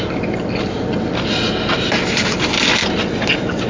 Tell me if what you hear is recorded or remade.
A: recorded